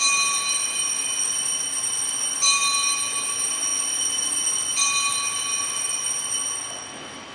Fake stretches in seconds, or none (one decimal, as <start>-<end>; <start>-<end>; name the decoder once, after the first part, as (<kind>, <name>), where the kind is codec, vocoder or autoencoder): none